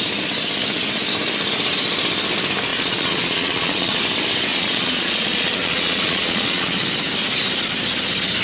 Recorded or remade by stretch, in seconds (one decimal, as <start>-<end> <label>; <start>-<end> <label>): 0.0-2.7 recorded; 2.7-4.0 remade; 4.0-4.5 recorded; 4.5-6.9 remade; 6.9-8.4 recorded